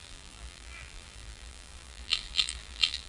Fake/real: fake